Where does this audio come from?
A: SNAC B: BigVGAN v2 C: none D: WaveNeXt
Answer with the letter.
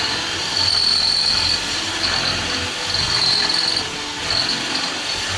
C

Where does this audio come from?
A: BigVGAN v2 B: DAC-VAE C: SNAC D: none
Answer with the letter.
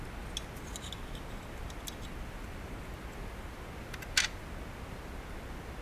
D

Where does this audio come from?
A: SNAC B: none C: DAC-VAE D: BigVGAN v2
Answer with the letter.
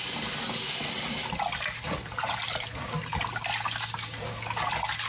B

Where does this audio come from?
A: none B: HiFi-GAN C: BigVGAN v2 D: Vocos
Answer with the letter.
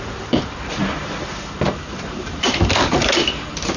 C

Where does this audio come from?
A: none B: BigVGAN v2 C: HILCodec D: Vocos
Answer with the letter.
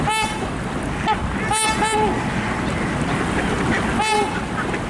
A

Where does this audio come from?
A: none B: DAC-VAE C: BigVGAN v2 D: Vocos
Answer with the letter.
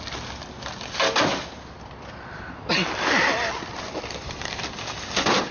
A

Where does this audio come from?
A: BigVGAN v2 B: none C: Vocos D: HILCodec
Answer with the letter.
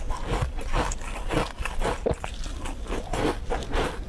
B